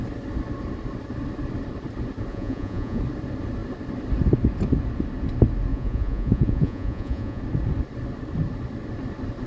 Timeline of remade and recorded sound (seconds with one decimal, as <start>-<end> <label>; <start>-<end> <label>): 0.0-2.3 recorded; 2.3-3.0 remade; 3.0-5.7 recorded; 5.7-7.4 remade; 7.4-9.5 recorded